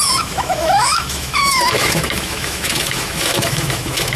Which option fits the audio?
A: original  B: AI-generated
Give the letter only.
B